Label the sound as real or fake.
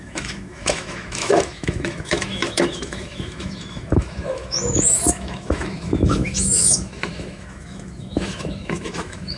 fake